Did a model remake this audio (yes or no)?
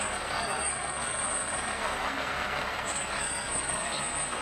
yes